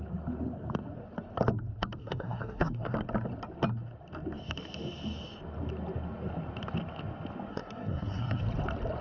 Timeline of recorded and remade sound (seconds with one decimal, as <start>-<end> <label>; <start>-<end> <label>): 0.0-2.0 recorded; 2.0-2.9 remade; 2.9-7.5 recorded; 7.5-8.4 remade; 8.4-9.0 recorded